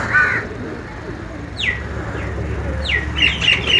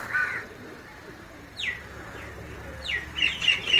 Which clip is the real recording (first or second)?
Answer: first